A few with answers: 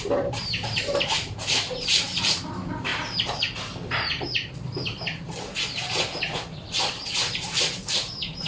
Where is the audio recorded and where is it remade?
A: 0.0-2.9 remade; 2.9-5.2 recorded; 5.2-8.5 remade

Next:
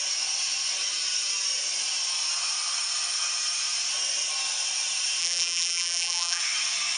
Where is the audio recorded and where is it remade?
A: 0.0-5.2 recorded; 5.2-6.4 remade; 6.4-7.0 recorded